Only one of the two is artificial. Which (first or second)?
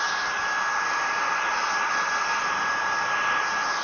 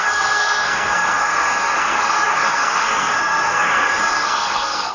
second